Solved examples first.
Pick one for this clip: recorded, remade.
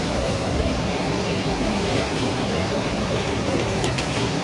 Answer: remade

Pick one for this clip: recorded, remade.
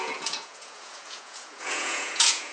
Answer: remade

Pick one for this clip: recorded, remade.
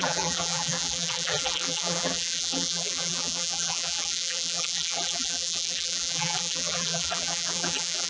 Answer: remade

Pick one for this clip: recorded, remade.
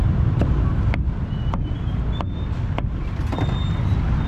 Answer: recorded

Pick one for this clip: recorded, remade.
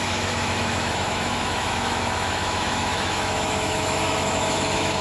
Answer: remade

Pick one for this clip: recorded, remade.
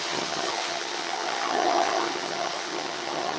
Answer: remade